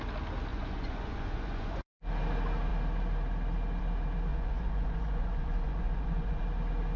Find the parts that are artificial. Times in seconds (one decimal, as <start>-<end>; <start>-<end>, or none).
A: 0.5-1.9; 4.3-6.4